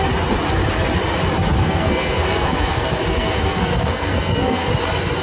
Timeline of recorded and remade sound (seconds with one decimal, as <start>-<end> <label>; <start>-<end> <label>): 0.0-1.6 recorded; 1.6-4.7 remade; 4.7-5.2 recorded